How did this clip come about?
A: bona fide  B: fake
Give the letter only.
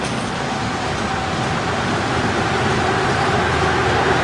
A